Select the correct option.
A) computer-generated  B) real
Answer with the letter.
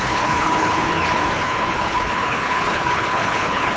A